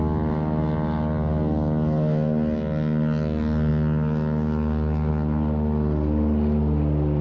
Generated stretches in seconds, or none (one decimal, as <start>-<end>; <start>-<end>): none